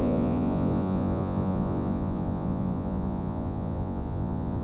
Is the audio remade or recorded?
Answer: remade